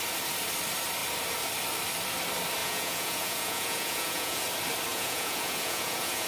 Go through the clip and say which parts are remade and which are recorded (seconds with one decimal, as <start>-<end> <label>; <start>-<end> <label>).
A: 0.0-2.6 recorded; 2.6-4.4 remade; 4.4-4.9 recorded; 4.9-6.3 remade